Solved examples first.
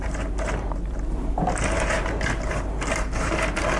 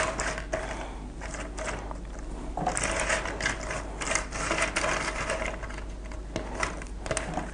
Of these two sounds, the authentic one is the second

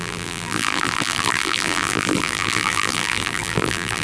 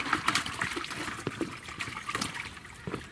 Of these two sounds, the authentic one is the second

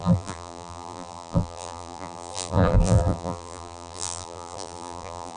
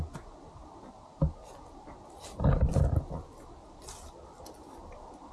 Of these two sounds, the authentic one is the second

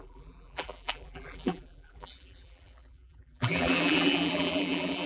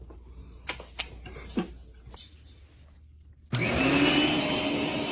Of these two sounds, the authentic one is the second